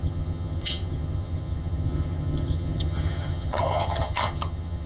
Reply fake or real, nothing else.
fake